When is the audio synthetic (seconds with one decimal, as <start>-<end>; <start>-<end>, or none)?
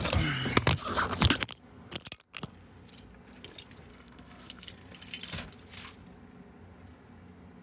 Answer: 3.9-4.7